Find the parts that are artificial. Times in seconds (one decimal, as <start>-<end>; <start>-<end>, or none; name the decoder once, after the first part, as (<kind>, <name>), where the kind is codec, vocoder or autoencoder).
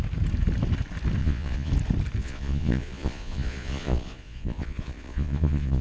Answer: 1.2-1.7 (vocoder, Vocos); 2.2-5.8